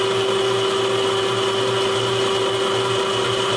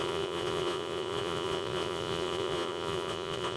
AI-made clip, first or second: second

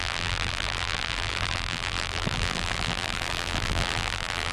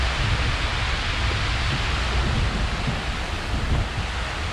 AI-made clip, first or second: first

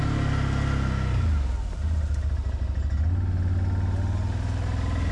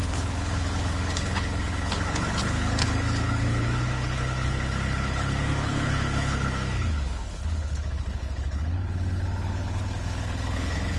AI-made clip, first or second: second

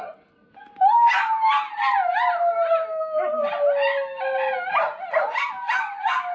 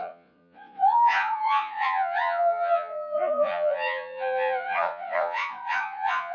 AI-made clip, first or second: second